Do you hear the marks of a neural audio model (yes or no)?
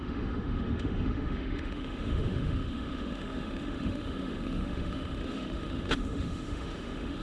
yes